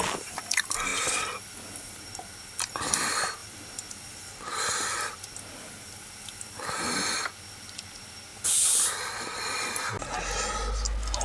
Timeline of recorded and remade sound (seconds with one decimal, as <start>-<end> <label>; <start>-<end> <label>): 0.0-3.4 recorded; 3.4-4.8 remade; 4.8-8.3 recorded; 8.3-9.9 remade; 9.9-11.2 recorded